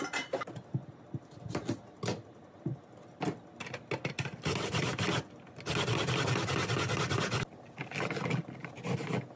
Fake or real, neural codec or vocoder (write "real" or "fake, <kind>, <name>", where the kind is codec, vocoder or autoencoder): real